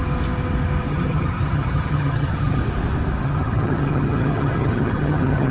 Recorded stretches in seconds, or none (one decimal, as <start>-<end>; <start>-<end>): 0.0-0.9; 2.6-3.2